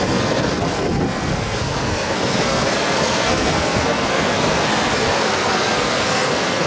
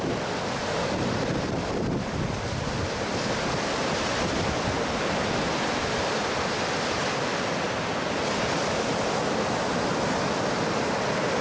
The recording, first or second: second